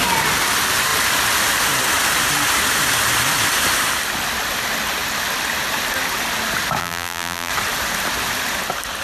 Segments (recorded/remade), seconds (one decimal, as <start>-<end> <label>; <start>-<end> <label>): 0.0-6.8 recorded; 6.8-7.5 remade; 7.5-9.0 recorded